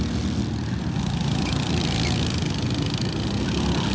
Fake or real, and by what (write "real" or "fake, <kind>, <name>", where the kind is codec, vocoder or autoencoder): real